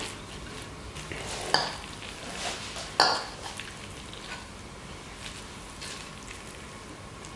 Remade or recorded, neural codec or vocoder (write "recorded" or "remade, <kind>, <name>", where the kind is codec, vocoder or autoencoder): recorded